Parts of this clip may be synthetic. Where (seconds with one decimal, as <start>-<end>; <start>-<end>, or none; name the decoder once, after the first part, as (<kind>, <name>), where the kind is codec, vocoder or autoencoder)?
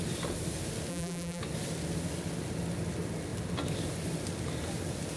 0.9-1.4 (vocoder, BigVGAN v2)